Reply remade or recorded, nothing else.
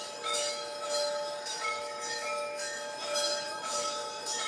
remade